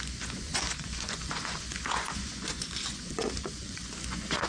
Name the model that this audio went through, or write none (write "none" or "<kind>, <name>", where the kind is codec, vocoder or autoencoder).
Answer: vocoder, Vocos